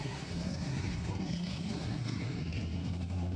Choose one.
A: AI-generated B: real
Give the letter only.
A